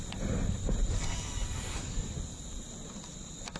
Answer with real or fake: real